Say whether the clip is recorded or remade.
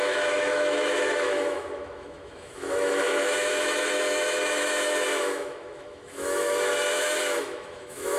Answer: remade